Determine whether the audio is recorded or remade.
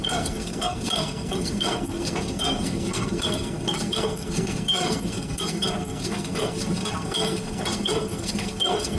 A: remade